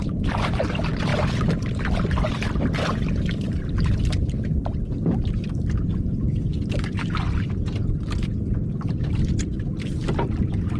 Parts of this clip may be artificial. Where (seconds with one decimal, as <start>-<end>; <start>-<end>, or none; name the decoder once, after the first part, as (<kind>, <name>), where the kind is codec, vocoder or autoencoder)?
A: none